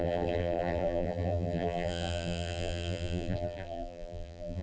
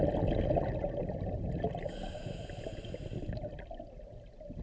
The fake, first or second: first